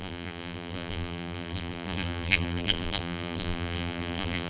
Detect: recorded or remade remade